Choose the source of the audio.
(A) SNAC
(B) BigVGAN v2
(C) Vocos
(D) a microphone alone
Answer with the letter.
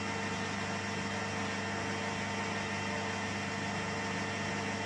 D